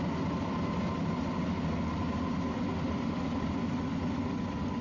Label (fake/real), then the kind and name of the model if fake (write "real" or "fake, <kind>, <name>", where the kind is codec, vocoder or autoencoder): real